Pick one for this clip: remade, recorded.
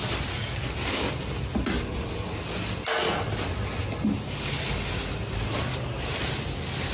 recorded